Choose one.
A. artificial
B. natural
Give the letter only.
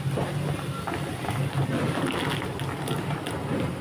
B